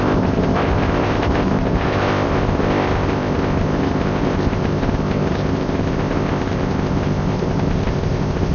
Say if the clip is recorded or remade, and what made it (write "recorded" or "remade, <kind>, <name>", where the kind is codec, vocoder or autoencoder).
remade, codec, ZipCodec